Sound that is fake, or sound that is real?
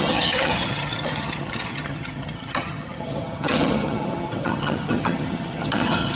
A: fake